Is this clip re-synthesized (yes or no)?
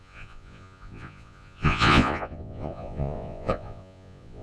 yes